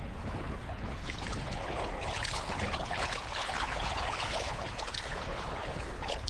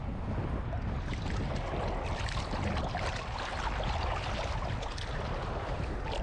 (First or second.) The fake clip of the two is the first